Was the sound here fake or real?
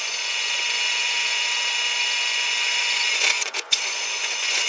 fake